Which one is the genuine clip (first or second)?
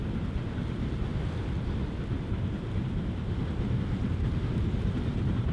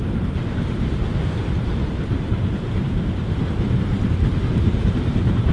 first